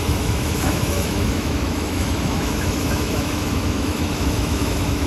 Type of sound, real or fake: fake